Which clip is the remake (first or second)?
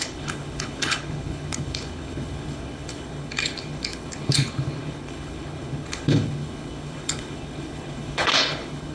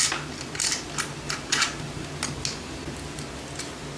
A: first